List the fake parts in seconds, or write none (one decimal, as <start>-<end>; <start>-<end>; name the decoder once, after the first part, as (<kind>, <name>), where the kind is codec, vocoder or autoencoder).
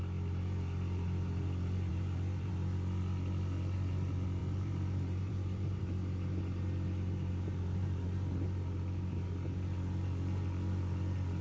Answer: 1.9-2.5 (vocoder, BigVGAN v2); 4.4-5.8